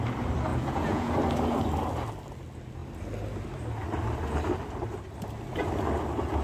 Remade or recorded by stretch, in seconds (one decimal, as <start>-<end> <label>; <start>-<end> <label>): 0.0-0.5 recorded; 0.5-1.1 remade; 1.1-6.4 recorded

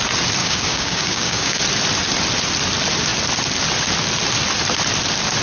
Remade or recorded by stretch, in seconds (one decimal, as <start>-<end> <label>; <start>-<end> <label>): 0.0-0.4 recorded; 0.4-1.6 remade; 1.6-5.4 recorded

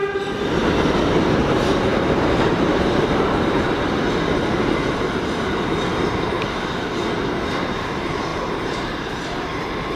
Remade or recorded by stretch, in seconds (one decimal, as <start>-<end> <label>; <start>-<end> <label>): 0.0-1.0 recorded; 1.0-7.0 remade; 7.0-7.5 recorded; 7.5-10.0 remade

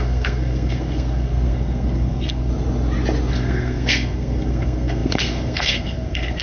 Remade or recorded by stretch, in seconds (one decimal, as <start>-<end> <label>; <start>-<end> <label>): 0.0-2.5 remade; 2.5-3.3 recorded; 3.3-6.4 remade

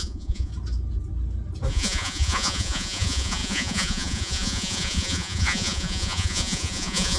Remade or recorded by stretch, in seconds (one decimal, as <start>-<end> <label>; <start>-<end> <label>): 0.0-0.5 remade; 0.5-1.7 recorded; 1.7-7.2 remade

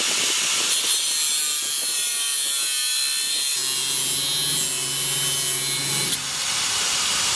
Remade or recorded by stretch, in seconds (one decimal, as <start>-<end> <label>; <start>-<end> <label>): 0.0-7.4 recorded

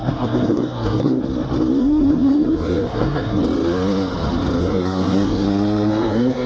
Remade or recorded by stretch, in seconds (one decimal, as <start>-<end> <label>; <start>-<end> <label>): 0.0-1.2 remade; 1.2-1.8 recorded; 1.8-3.4 remade; 3.4-4.6 recorded; 4.6-6.5 remade

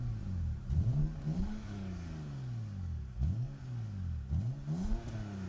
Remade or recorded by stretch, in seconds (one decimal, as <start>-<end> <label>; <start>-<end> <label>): 0.0-1.0 recorded; 1.0-4.3 remade; 4.3-5.5 recorded